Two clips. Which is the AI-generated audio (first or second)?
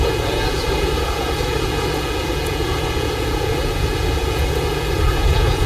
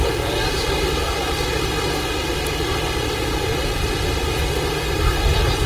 first